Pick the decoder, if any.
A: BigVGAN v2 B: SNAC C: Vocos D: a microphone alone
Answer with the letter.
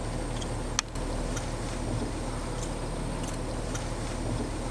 D